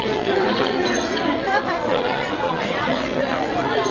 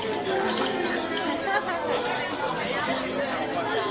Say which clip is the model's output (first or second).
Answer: first